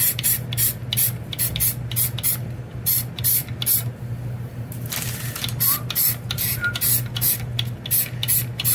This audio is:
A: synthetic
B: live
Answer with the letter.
B